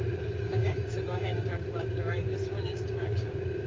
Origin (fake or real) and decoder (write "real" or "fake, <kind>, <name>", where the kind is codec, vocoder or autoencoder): fake, codec, DAC